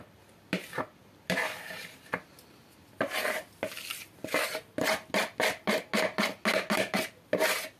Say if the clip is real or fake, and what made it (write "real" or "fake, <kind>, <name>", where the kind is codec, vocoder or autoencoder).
real